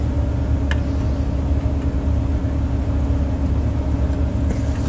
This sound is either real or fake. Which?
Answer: real